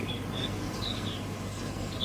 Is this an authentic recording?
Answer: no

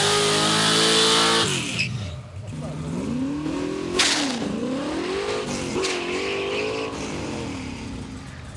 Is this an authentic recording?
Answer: yes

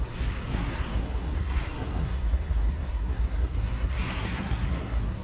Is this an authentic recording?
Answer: no